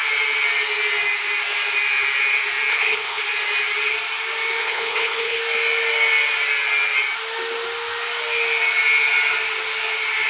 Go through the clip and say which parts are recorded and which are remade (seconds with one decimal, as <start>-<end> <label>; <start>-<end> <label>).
0.0-2.7 recorded; 2.7-3.2 remade; 3.2-4.6 recorded; 4.6-5.4 remade; 5.4-10.3 recorded